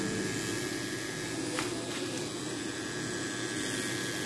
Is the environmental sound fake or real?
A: real